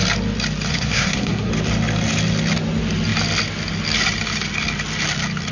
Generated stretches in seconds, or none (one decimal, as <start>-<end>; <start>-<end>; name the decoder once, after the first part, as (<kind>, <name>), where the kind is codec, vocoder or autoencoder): 0.7-1.5 (codec, SNAC)